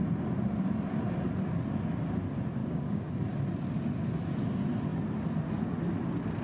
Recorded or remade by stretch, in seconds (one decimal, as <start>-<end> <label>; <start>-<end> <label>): 0.0-2.6 recorded; 2.6-3.1 remade; 3.1-6.4 recorded